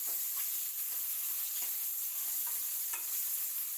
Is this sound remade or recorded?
recorded